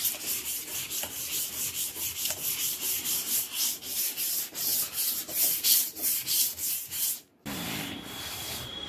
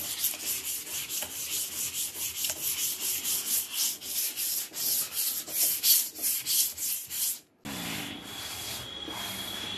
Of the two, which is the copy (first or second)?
first